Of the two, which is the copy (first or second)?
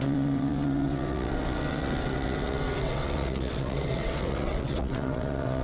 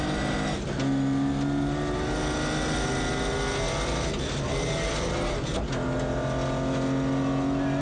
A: first